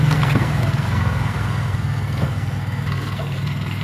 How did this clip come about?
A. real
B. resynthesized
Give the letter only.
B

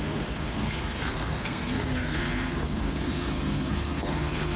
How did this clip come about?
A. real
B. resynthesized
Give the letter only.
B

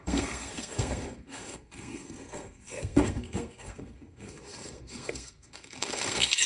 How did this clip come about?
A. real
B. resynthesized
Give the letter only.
B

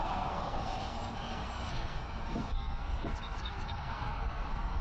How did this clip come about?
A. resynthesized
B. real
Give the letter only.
A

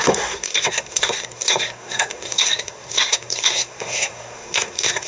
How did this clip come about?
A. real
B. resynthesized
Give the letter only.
B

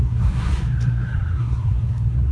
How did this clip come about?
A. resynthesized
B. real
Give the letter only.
A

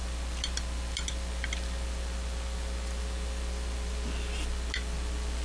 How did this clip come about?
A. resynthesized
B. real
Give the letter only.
B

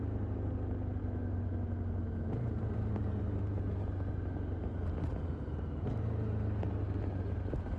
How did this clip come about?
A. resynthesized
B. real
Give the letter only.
B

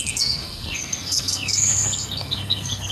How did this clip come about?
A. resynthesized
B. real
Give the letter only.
A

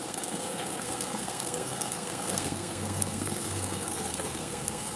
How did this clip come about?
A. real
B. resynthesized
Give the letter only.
B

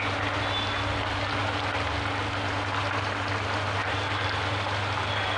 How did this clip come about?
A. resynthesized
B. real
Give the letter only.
B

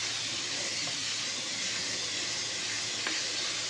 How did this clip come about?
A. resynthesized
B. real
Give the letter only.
B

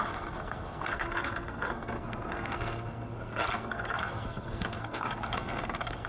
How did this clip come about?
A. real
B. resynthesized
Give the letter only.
B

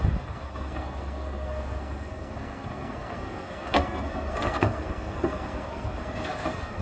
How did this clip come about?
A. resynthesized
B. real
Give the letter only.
A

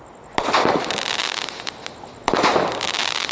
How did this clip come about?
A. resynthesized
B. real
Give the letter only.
B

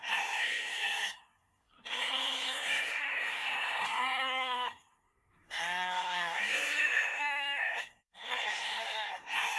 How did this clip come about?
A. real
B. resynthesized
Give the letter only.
B